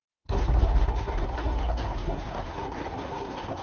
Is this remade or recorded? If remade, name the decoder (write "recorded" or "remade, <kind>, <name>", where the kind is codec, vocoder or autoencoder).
remade, codec, SNAC